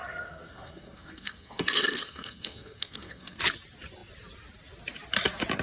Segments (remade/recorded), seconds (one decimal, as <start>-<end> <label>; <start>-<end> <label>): 0.0-3.4 remade; 3.4-5.6 recorded